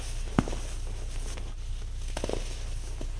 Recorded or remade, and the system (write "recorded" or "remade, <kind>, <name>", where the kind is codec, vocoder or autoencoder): recorded